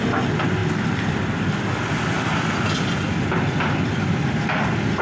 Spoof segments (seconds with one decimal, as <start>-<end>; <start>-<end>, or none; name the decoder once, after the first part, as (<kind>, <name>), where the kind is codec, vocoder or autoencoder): none